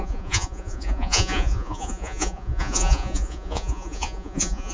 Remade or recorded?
remade